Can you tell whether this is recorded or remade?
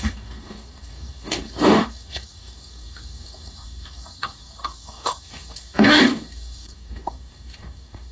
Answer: remade